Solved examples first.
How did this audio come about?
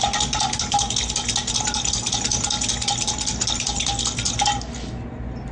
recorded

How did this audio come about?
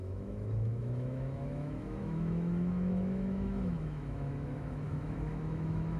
remade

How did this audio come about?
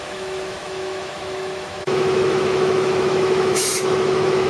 remade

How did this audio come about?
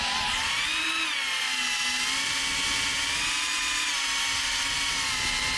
recorded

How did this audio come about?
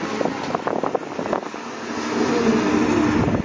recorded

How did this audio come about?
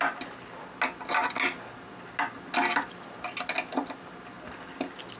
recorded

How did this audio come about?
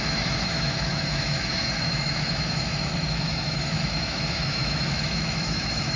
remade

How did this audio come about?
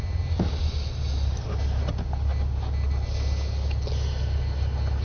recorded